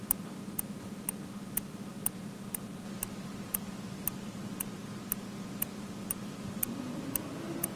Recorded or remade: recorded